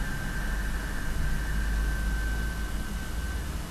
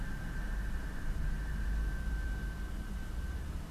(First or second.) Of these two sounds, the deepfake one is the second